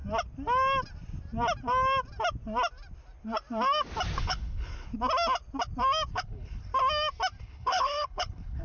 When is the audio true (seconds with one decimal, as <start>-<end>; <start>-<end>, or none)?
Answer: 0.0-4.2; 4.9-6.1; 6.7-7.4